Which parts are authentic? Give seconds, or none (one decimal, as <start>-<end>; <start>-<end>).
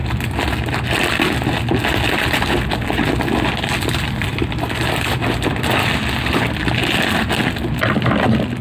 0.0-4.3; 5.6-8.6